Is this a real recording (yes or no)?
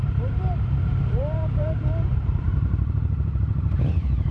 no